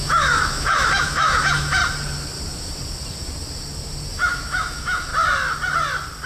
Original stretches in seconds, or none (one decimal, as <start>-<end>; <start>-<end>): 1.8-4.1; 5.1-6.3